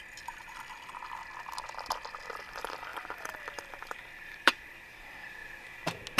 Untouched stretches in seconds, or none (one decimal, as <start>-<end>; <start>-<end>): 1.0-2.3; 5.4-6.2